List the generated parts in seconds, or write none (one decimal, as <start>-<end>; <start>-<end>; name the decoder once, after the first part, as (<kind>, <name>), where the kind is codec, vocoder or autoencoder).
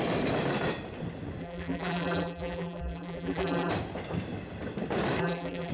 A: 1.4-3.7 (vocoder, BigVGAN v2); 5.2-5.7